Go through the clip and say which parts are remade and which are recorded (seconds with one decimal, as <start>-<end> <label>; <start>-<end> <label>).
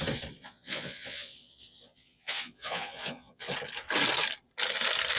0.0-0.4 recorded; 0.4-3.5 remade; 3.5-5.2 recorded